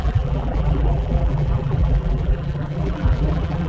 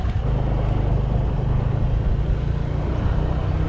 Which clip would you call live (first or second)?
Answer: second